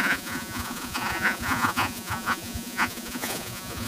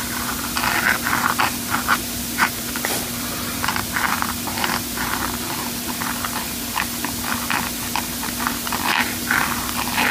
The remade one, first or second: first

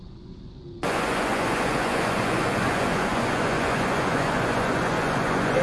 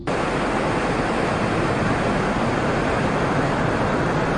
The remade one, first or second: first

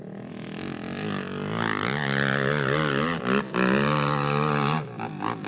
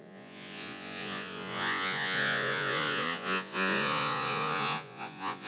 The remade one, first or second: second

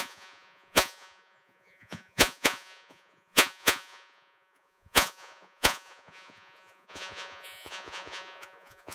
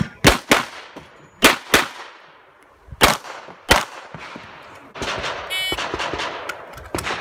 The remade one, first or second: first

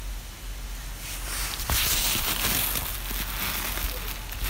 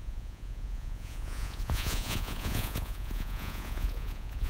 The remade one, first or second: second